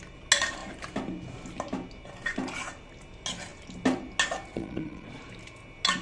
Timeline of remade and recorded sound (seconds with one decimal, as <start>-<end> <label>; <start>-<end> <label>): 0.0-4.5 recorded; 4.5-5.2 remade; 5.2-6.0 recorded